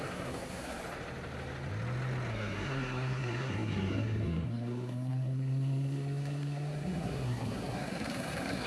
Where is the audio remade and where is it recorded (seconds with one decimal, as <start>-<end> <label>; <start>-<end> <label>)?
0.0-0.8 remade; 0.8-2.3 recorded; 2.3-8.7 remade

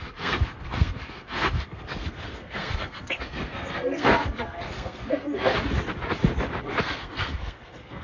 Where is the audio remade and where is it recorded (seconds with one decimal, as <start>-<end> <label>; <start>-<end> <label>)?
0.0-5.5 remade; 5.5-6.7 recorded; 6.7-8.0 remade

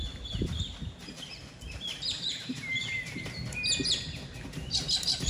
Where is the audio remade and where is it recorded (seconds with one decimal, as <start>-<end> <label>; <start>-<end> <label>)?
0.0-0.6 remade; 0.6-1.0 recorded; 1.0-3.2 remade; 3.2-5.3 recorded

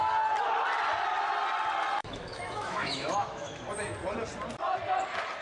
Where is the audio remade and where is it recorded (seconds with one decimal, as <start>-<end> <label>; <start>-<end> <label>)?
0.0-2.0 recorded; 2.0-3.6 remade; 3.6-5.4 recorded